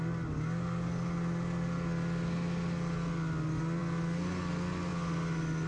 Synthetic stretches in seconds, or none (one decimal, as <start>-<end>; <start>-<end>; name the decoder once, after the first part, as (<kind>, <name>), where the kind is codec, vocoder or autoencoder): none